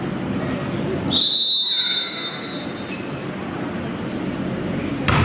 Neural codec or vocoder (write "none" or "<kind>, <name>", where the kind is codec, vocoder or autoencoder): none